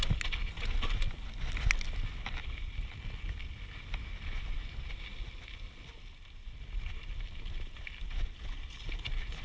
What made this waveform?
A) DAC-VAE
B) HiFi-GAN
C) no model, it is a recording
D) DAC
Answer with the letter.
C